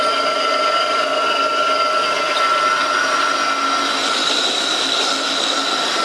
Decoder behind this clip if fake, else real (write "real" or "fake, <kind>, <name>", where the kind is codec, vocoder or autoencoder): real